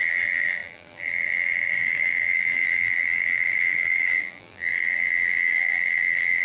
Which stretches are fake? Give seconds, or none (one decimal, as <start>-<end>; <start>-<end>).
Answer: 0.0-6.4